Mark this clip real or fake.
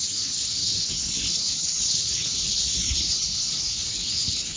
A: fake